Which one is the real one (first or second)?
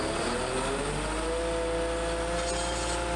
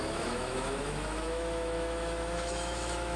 first